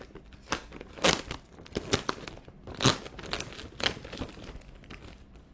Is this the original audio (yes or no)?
yes